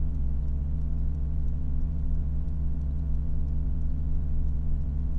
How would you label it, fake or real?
fake